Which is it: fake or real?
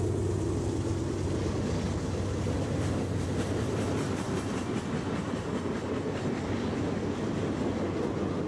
real